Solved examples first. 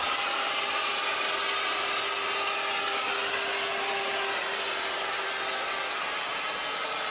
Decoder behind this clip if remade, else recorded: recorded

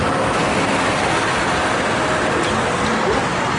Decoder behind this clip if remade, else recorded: recorded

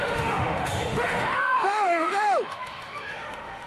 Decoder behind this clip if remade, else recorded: remade, autoencoder, DAC-VAE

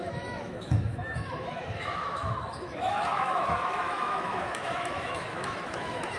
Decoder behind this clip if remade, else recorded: remade, autoencoder, DAC-VAE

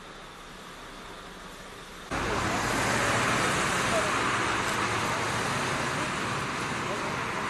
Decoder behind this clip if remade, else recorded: recorded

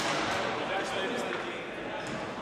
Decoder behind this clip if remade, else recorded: recorded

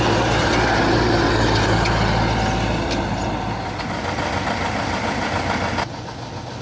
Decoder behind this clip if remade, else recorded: recorded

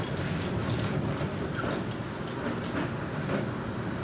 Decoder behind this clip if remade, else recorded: recorded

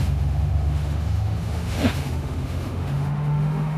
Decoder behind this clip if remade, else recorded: remade, autoencoder, DAC-VAE